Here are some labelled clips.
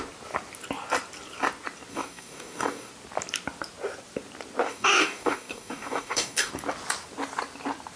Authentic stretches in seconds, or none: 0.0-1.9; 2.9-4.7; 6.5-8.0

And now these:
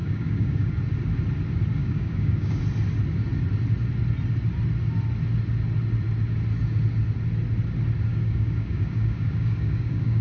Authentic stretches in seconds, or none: 0.8-1.8; 2.6-8.1

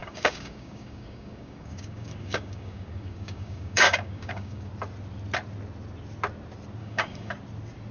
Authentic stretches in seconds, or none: 4.7-6.8; 7.3-7.9

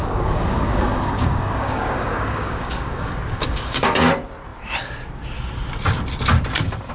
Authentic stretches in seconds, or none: 4.1-6.9

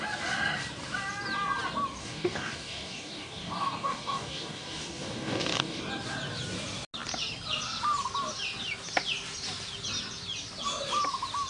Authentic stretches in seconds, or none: 0.0-2.0; 5.8-11.5